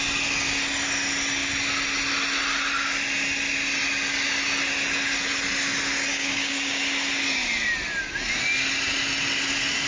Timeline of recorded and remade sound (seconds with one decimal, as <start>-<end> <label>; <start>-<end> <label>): 0.0-6.1 recorded; 6.1-6.8 remade; 6.8-9.9 recorded